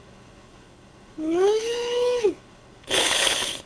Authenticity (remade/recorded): remade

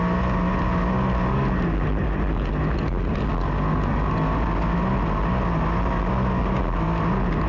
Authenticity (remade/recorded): recorded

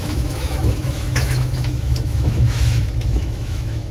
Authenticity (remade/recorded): remade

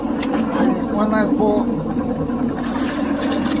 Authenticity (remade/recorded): recorded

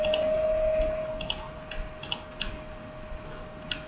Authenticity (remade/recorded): recorded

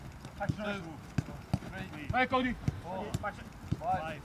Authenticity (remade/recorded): recorded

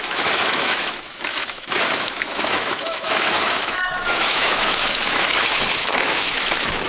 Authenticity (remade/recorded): remade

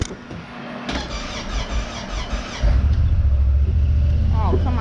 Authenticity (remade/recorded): recorded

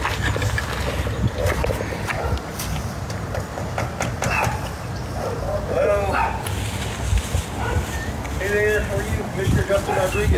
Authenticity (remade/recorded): recorded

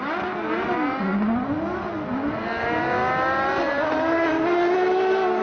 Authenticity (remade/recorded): recorded